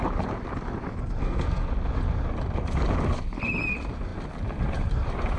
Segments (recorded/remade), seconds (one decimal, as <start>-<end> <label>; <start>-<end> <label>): 0.0-1.2 recorded; 1.2-1.7 remade; 1.7-5.4 recorded

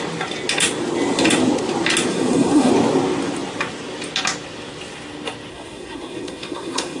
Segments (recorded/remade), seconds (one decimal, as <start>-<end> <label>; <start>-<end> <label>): 0.0-2.1 recorded; 2.1-2.7 remade; 2.7-5.5 recorded; 5.5-7.0 remade

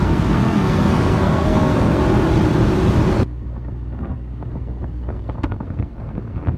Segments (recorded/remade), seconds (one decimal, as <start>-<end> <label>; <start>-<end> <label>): 0.0-2.0 remade; 2.0-3.1 recorded; 3.1-6.6 remade

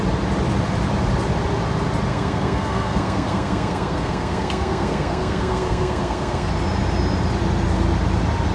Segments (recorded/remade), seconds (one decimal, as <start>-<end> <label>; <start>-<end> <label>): 0.0-2.1 recorded; 2.1-6.5 remade; 6.5-8.5 recorded

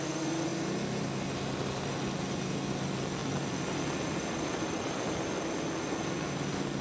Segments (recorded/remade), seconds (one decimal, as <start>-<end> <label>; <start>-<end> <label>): 0.0-6.8 recorded